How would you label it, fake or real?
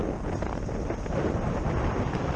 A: real